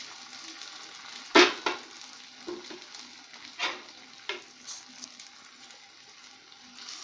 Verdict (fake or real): real